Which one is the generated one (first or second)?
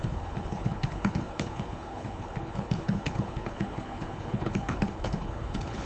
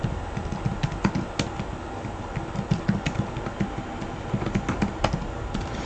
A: first